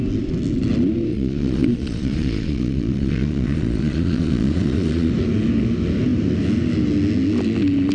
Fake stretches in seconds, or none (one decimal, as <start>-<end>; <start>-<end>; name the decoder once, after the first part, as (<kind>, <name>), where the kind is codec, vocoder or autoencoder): 1.1-5.1 (vocoder, Vocos)